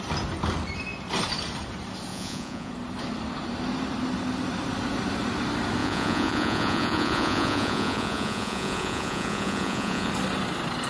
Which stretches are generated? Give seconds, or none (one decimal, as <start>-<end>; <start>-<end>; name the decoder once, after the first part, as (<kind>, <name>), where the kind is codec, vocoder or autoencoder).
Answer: 2.1-2.7 (vocoder, Vocos); 5.8-10.1

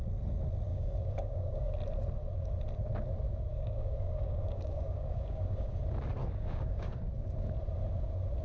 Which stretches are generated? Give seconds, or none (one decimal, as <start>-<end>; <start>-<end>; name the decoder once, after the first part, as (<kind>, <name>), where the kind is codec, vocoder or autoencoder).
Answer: 0.7-1.7 (codec, DAC); 3.5-5.8; 6.2-7.0

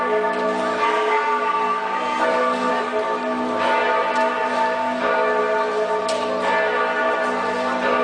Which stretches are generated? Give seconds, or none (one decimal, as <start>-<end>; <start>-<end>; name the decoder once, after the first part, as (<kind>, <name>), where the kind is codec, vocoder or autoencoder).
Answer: 0.8-2.7 (codec, SNAC)

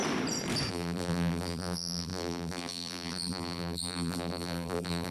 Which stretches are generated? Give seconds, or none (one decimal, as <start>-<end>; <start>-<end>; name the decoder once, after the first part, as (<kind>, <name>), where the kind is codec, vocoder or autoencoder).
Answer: 0.7-5.1 (vocoder, BigVGAN v2)